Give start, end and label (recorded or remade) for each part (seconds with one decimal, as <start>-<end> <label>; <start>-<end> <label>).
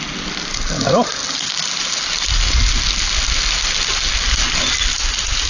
0.0-5.5 recorded